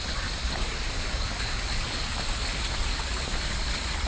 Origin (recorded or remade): recorded